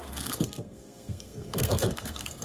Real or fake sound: fake